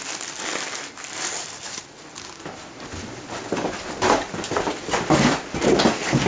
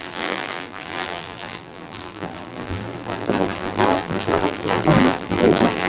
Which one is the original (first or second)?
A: first